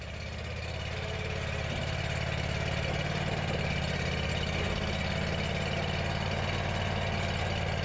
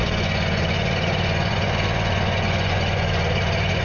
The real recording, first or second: first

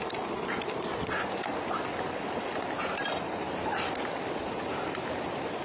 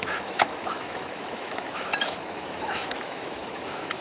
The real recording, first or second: first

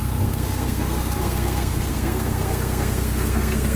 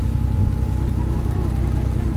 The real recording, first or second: second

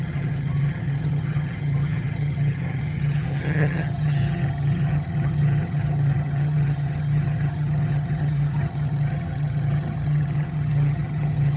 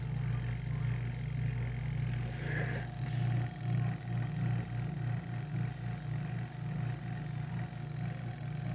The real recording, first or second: second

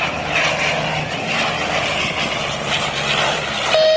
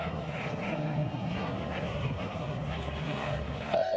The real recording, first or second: first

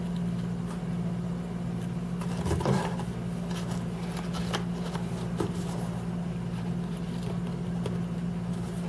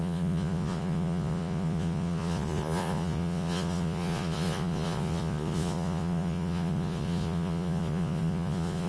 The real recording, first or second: first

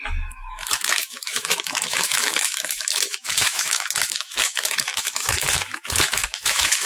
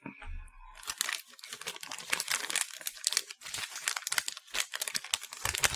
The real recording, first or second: second